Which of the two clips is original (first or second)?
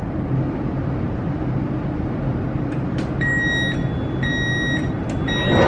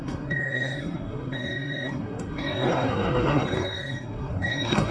first